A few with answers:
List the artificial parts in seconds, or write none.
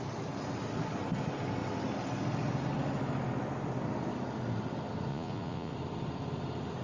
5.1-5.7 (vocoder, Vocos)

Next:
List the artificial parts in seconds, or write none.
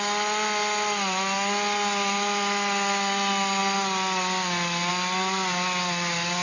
none